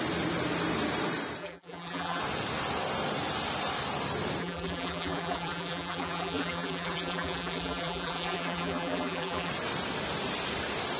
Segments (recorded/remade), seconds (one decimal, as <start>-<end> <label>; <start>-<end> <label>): 0.0-1.4 recorded; 1.4-2.2 remade; 2.2-4.4 recorded; 4.4-9.5 remade; 9.5-11.0 recorded